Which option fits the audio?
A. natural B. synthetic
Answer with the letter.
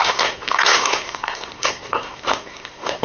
B